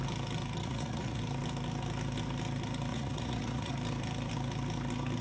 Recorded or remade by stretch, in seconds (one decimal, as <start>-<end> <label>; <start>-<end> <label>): 0.0-0.6 recorded; 0.6-1.2 remade; 1.2-2.9 recorded; 2.9-3.7 remade; 3.7-5.2 recorded